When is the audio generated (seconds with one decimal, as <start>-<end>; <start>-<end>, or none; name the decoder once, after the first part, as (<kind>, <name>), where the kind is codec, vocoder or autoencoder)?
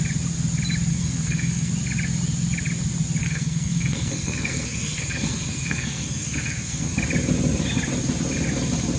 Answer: 0.9-1.7 (codec, SNAC); 3.2-6.9